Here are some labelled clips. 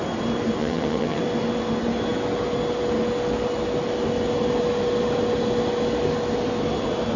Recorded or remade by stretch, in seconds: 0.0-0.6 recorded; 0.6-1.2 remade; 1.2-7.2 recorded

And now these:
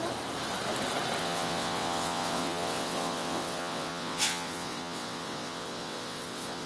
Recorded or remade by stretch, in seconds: 0.0-1.2 recorded; 1.2-6.7 remade